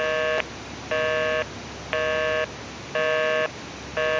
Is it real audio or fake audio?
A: real